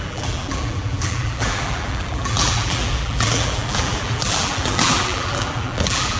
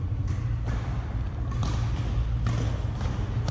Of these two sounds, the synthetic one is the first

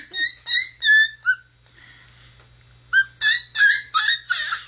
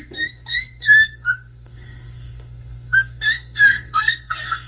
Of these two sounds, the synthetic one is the second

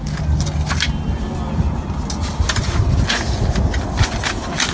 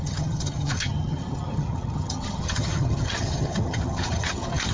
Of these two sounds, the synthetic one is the second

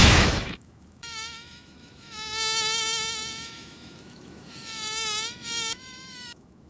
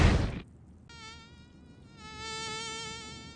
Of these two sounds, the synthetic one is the first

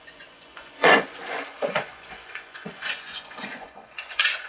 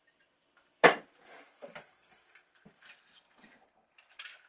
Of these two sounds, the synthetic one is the first